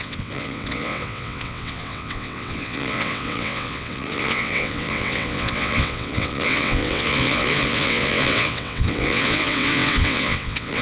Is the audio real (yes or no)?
no